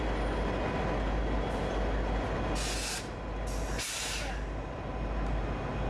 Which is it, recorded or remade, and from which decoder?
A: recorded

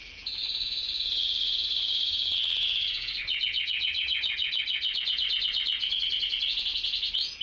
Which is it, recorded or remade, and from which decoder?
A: remade, vocoder, Vocos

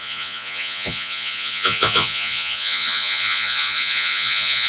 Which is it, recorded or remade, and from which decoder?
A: remade, vocoder, Vocos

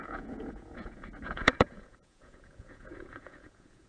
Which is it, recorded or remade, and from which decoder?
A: remade, vocoder, Vocos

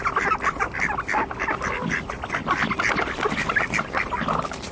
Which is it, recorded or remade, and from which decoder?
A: recorded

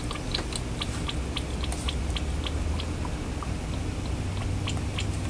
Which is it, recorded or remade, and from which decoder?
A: recorded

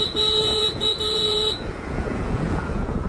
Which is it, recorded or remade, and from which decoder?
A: remade, vocoder, Vocos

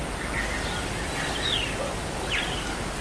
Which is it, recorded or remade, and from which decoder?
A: recorded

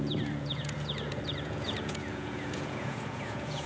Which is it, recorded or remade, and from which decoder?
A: remade, vocoder, Vocos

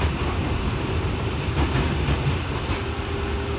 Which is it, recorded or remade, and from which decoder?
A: recorded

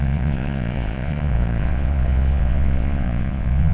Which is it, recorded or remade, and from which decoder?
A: remade, vocoder, Vocos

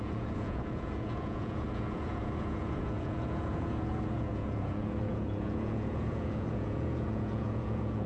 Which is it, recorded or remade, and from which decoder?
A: remade, vocoder, Vocos